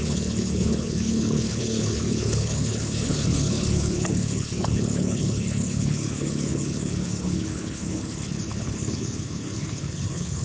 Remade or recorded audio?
remade